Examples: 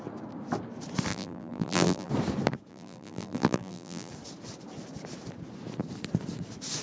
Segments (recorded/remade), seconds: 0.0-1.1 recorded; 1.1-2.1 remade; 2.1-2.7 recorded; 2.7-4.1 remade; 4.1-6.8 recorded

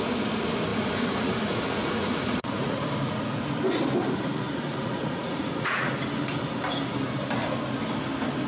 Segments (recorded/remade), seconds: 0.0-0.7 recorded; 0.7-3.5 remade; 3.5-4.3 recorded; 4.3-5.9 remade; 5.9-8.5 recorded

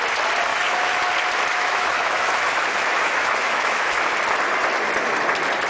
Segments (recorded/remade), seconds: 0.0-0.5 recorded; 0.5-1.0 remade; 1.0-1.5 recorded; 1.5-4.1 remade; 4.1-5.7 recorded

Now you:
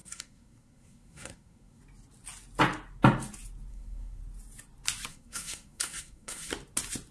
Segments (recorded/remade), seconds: 0.0-1.8 remade; 1.8-3.7 recorded; 3.7-4.2 remade; 4.2-5.1 recorded; 5.1-6.5 remade; 6.5-7.1 recorded